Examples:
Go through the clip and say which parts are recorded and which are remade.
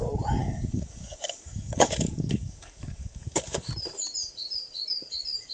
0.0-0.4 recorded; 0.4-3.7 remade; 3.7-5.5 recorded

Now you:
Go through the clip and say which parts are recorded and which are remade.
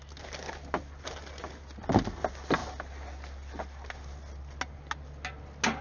0.0-5.8 recorded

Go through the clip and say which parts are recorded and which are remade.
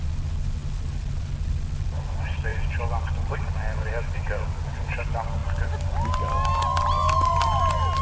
0.0-8.0 recorded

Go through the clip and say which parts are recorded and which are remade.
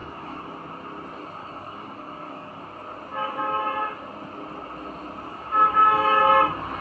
0.0-0.5 remade; 0.5-1.4 recorded; 1.4-2.6 remade; 2.6-3.1 recorded; 3.1-3.6 remade; 3.6-5.3 recorded; 5.3-6.2 remade; 6.2-6.8 recorded